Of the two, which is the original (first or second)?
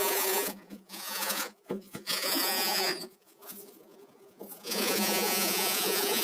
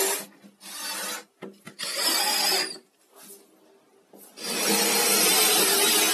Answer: second